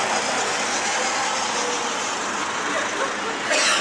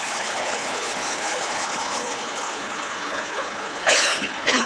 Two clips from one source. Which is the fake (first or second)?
second